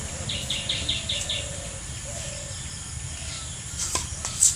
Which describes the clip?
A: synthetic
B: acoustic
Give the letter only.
B